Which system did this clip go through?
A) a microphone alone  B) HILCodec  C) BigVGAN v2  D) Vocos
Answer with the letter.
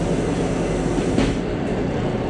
A